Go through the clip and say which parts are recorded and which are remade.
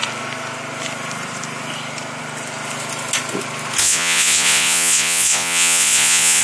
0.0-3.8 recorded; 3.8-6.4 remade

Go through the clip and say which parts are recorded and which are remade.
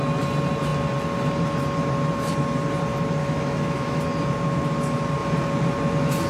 0.0-3.2 recorded; 3.2-4.0 remade; 4.0-6.3 recorded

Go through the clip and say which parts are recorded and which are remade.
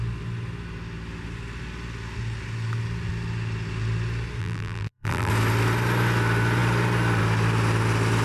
0.0-4.4 recorded; 4.4-5.3 remade; 5.3-8.2 recorded